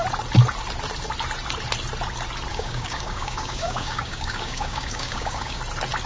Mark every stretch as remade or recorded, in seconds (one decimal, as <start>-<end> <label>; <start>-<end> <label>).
0.0-2.5 recorded; 2.5-5.6 remade; 5.6-6.1 recorded